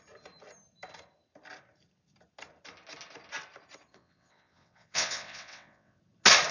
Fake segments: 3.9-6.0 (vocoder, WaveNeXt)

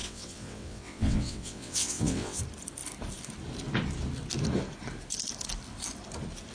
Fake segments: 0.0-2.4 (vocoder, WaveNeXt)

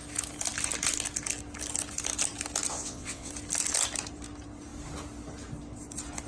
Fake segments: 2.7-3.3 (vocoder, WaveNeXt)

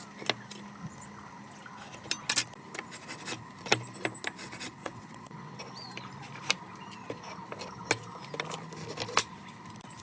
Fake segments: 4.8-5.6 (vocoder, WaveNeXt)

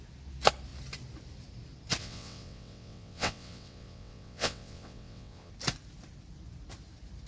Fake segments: 2.0-5.5 (vocoder, WaveNeXt)